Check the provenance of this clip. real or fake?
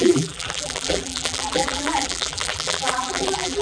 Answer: fake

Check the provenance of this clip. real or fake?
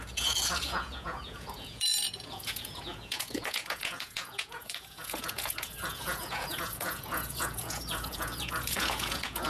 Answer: fake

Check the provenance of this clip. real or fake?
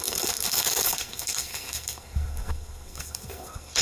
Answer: fake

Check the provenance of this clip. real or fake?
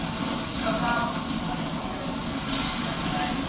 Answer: real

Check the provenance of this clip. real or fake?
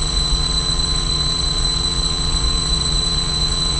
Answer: fake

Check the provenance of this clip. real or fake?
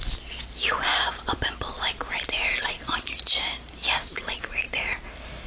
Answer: real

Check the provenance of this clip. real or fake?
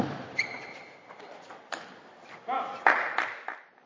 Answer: real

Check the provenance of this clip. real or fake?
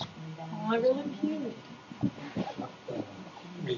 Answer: real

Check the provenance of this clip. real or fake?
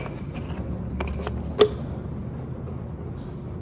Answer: real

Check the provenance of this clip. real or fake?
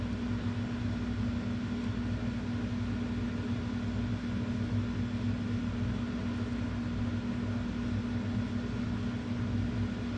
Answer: real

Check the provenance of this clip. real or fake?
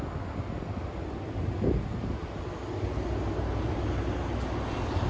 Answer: real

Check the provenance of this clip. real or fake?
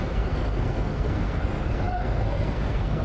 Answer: fake